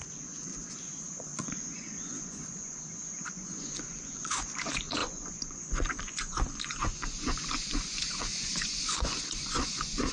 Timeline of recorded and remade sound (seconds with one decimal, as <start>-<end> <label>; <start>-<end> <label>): 0.0-10.1 remade